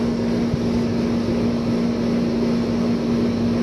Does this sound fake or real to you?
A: real